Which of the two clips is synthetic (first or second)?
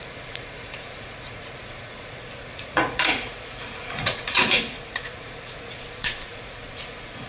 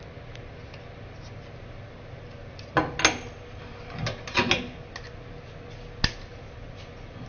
first